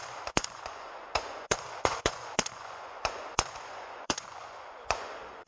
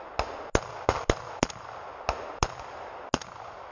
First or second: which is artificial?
first